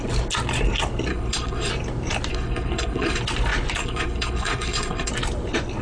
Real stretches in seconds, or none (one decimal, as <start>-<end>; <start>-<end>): 0.0-1.1; 1.7-2.3; 3.2-3.8; 5.1-5.8